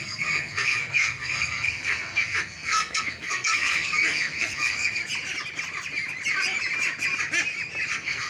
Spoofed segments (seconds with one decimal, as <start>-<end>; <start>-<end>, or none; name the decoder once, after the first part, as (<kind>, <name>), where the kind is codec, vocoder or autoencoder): 0.0-5.0 (codec, SNAC); 7.9-8.3